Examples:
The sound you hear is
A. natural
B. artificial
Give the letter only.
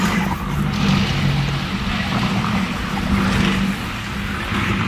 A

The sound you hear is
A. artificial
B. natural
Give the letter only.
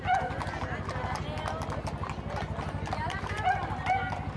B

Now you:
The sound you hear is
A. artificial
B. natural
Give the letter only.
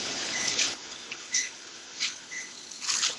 A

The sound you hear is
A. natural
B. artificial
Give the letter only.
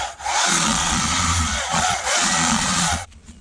B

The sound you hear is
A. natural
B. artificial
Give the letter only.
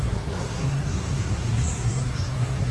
B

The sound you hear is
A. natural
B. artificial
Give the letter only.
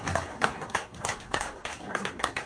B